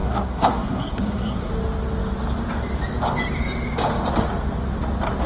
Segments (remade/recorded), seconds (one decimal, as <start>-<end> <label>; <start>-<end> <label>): 0.0-1.5 remade; 1.5-5.3 recorded